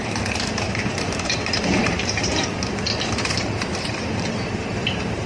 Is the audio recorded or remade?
remade